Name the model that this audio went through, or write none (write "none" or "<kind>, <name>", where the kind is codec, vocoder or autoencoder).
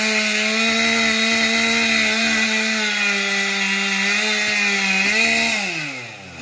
none